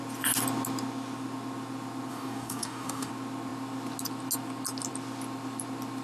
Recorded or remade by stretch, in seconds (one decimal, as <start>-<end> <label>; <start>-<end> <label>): 0.0-2.1 recorded; 2.1-3.1 remade; 3.1-6.0 recorded